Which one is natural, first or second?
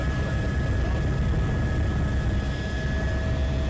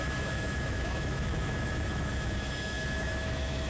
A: first